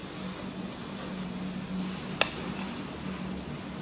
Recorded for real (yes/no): yes